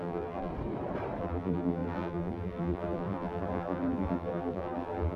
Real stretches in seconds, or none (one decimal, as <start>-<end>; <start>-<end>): 0.5-1.2